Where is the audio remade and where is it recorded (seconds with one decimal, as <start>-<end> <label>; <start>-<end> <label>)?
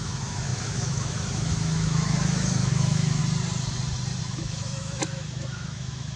0.0-3.2 remade; 3.2-4.2 recorded; 4.2-6.2 remade